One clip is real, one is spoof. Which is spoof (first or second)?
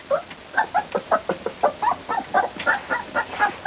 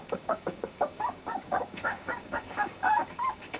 second